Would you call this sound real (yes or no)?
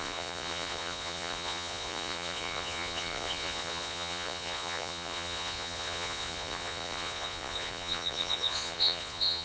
no